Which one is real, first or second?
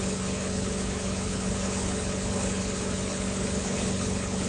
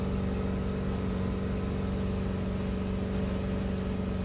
second